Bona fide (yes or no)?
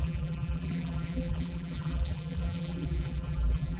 no